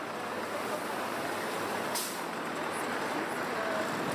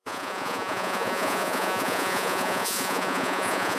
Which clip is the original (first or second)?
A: first